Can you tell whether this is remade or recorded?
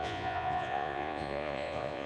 remade